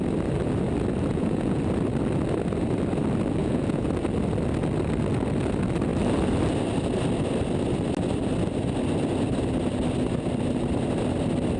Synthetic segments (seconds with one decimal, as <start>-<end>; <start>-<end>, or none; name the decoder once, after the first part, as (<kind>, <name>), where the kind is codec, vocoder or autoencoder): 1.1-1.6 (vocoder, Vocos); 3.4-3.9